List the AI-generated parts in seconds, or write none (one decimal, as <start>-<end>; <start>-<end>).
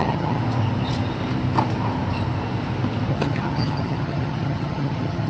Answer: 0.0-0.4; 3.1-5.3